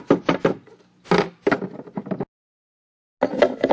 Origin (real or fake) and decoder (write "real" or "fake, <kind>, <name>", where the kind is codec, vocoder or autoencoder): real